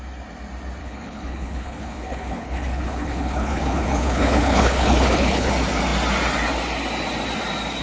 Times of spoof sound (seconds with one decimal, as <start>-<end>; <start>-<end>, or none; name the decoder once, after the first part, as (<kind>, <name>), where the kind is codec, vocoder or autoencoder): 0.8-5.5 (codec, HILCodec)